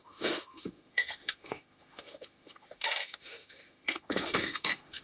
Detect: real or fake fake